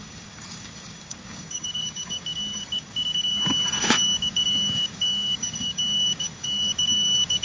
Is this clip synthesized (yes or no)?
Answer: yes